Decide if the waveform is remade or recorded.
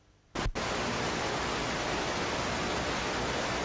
recorded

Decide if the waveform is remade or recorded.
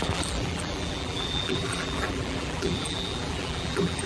remade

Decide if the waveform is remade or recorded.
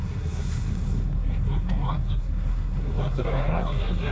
remade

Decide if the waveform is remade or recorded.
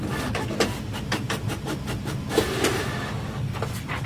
recorded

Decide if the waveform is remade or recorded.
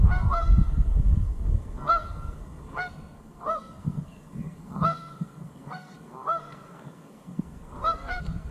remade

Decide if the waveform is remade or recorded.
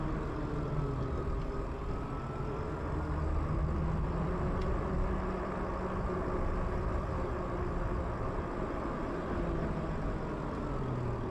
recorded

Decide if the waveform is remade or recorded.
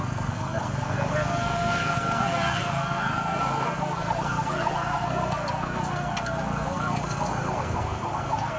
remade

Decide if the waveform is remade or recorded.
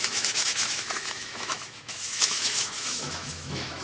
remade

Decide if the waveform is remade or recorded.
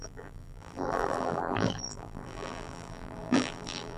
remade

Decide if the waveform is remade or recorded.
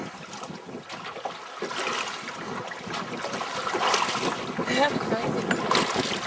recorded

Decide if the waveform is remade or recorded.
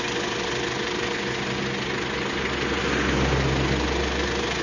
recorded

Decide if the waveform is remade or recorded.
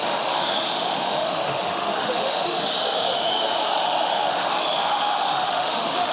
remade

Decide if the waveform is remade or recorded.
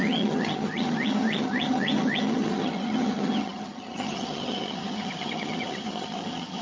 remade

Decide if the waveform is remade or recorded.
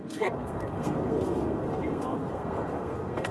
remade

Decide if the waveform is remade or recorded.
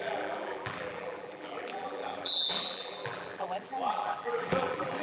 remade